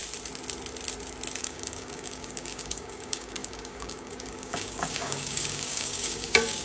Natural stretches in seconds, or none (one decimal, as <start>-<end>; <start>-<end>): 0.0-1.4